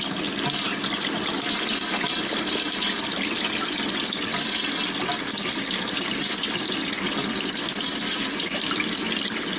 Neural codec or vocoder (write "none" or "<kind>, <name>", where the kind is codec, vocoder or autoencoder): none